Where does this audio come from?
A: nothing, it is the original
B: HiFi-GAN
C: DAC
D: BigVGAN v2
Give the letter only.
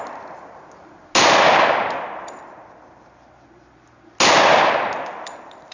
A